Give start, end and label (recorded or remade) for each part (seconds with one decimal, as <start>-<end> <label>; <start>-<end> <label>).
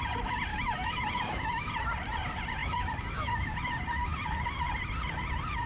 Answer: 0.0-0.5 recorded; 0.5-1.7 remade; 1.7-2.6 recorded; 2.6-3.5 remade; 3.5-5.7 recorded